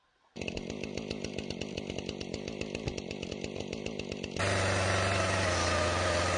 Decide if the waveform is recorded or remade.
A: recorded